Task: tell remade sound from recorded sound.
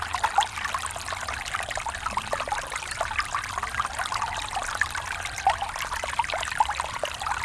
recorded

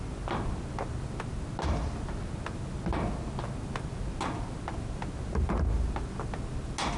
recorded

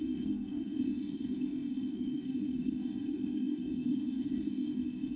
remade